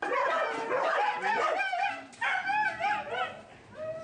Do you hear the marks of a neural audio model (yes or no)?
no